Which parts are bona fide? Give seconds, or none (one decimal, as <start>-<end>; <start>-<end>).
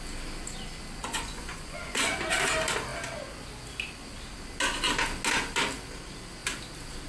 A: 0.0-1.0; 2.2-7.1